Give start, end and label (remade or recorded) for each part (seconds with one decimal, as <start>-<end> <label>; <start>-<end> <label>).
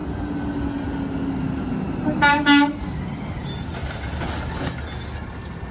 0.0-5.7 recorded